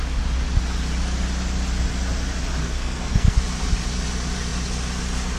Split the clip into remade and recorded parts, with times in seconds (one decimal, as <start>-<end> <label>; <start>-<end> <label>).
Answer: 0.0-2.6 recorded; 2.6-3.4 remade; 3.4-5.4 recorded

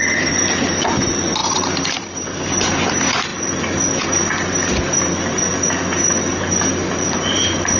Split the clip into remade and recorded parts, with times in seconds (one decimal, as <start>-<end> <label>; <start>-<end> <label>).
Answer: 0.0-7.8 recorded

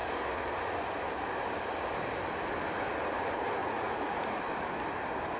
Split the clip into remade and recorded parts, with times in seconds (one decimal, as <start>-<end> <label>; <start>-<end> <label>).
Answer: 0.0-3.6 recorded; 3.6-4.5 remade; 4.5-5.4 recorded

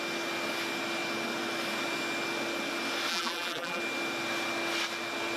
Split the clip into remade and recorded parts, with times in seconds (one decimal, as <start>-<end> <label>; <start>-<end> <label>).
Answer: 0.0-3.1 recorded; 3.1-3.8 remade; 3.8-5.4 recorded

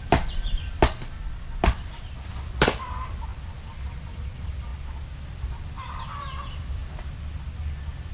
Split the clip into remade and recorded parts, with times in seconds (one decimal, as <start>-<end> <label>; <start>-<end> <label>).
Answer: 0.0-4.7 remade; 4.7-5.3 recorded; 5.3-6.8 remade; 6.8-8.1 recorded

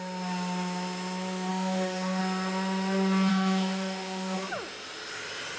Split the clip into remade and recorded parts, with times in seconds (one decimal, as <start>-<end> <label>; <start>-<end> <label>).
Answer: 0.0-1.5 recorded; 1.5-2.2 remade; 2.2-3.3 recorded; 3.3-4.5 remade; 4.5-5.6 recorded

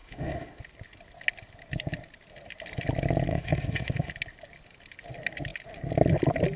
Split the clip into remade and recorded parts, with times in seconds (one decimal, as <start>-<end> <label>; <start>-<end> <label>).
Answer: 0.0-0.6 remade; 0.6-3.3 recorded; 3.3-4.1 remade; 4.1-6.6 recorded